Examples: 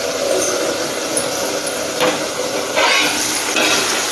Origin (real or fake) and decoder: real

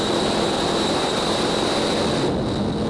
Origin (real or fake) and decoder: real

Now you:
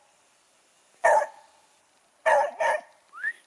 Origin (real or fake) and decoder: real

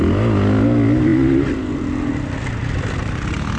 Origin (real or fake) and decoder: real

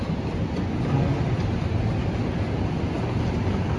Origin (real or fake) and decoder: real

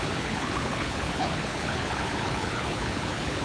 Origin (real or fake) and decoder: fake, codec, HILCodec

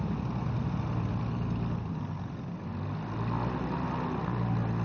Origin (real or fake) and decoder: real